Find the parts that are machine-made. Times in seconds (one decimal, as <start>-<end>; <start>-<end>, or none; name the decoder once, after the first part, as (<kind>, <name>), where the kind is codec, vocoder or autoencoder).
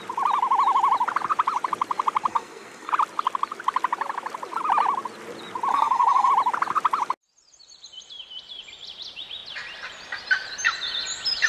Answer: 2.3-2.9 (codec, SNAC); 5.7-6.3